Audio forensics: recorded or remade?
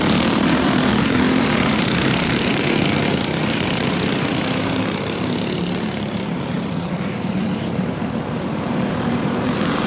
remade